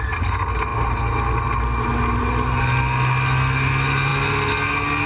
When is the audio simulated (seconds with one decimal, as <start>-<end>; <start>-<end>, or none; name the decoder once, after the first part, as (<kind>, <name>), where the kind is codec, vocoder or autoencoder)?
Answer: none